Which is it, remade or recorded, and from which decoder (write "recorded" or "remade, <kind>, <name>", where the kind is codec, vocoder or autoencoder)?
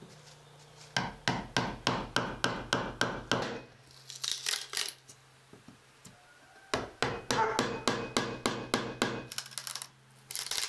recorded